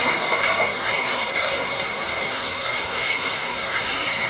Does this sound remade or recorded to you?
remade